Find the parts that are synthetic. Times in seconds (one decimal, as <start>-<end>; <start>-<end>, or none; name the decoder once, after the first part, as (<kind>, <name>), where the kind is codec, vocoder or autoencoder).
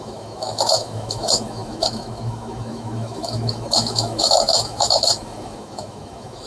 0.0-6.5 (autoencoder, DAC-VAE)